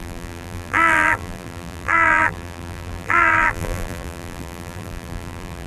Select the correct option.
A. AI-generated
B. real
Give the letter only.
A